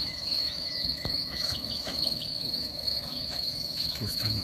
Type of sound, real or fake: fake